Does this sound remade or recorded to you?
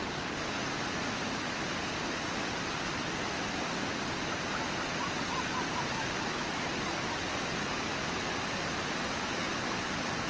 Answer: recorded